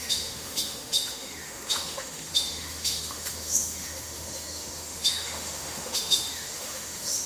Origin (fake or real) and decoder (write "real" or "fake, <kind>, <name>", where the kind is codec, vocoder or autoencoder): fake, autoencoder, DAC-VAE